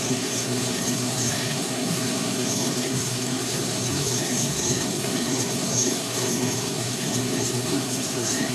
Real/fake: fake